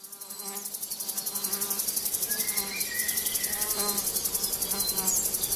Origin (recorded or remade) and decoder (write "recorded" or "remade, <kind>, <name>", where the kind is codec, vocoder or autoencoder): recorded